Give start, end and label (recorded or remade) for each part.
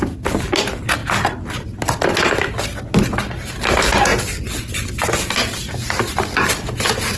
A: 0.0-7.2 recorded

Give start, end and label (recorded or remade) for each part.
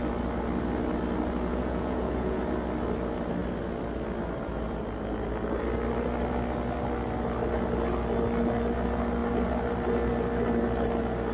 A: 0.0-1.5 recorded; 1.5-2.4 remade; 2.4-11.3 recorded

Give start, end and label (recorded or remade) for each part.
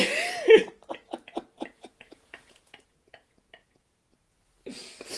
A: 0.0-0.9 recorded; 0.9-4.0 remade; 4.0-5.2 recorded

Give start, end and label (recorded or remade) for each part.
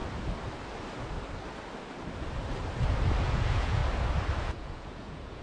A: 0.0-3.2 recorded; 3.2-3.8 remade; 3.8-4.4 recorded; 4.4-5.4 remade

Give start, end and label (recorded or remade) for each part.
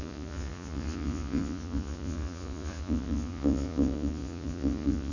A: 0.0-5.1 remade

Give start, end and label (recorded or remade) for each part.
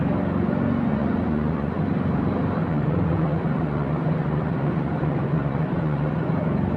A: 0.0-0.9 recorded; 0.9-1.8 remade; 1.8-2.6 recorded; 2.6-6.3 remade; 6.3-6.8 recorded